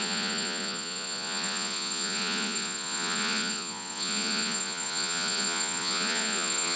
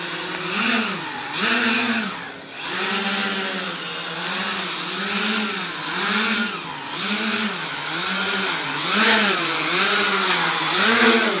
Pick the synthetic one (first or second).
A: first